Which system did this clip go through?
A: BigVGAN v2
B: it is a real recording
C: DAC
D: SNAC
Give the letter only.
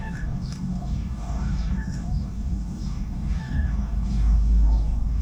C